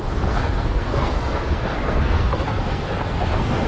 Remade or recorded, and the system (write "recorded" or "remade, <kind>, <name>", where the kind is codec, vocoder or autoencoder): remade, codec, SNAC